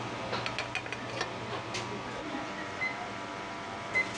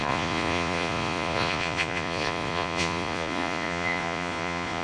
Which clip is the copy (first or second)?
second